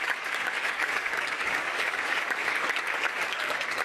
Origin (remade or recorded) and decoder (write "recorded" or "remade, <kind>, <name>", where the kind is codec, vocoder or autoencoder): remade, codec, DAC